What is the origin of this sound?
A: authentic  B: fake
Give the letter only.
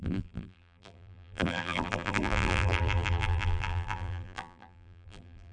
B